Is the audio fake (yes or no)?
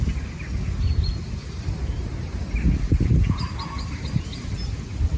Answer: no